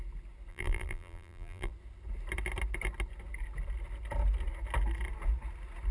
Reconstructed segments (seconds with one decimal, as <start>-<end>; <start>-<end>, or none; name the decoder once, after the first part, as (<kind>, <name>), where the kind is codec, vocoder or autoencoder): 0.5-1.7 (vocoder, BigVGAN v2)